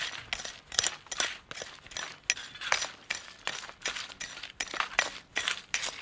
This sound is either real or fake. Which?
real